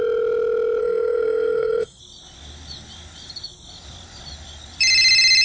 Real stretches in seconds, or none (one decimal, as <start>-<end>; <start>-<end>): 0.0-0.8; 2.0-5.4